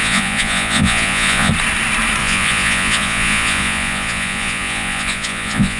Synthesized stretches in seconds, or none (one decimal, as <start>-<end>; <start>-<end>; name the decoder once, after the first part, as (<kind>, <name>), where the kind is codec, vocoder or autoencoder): 0.0-1.5 (vocoder, Vocos); 2.2-5.8